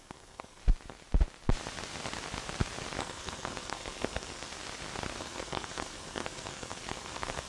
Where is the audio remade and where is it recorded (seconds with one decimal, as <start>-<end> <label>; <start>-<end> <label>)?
0.0-0.6 remade; 0.6-3.0 recorded; 3.0-4.5 remade; 4.5-5.2 recorded; 5.2-7.5 remade